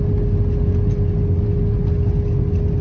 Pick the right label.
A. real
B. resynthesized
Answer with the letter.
A